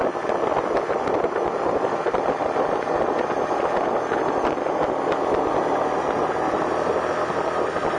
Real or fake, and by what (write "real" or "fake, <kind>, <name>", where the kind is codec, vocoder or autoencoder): real